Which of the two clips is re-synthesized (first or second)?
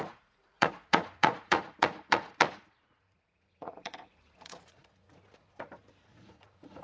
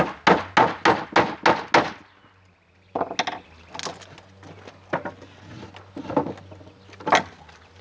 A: first